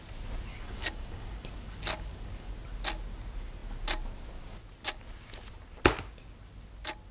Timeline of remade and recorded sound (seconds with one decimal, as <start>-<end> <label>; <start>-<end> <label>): 0.0-0.5 recorded; 0.5-2.5 remade; 2.5-7.1 recorded